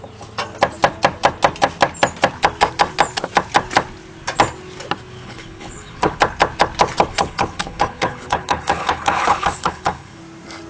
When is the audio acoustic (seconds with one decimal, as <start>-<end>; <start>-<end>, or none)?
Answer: 0.0-5.2; 6.2-7.1; 10.2-10.7